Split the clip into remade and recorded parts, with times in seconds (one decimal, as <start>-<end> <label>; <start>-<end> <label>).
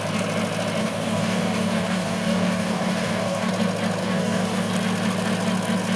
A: 0.0-0.8 recorded; 0.8-3.5 remade; 3.5-4.0 recorded; 4.0-4.7 remade; 4.7-6.0 recorded